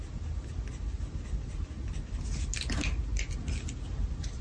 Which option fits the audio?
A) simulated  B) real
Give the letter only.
B